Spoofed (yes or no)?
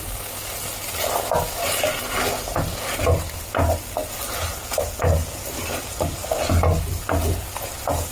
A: no